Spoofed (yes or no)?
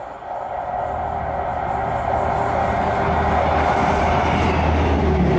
no